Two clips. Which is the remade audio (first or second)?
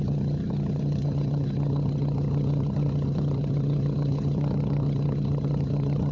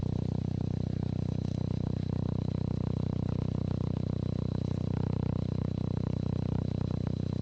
first